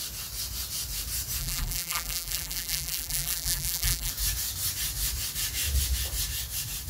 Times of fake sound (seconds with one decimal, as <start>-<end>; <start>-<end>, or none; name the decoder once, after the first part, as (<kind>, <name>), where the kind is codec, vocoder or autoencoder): 1.4-4.1 (vocoder, BigVGAN v2)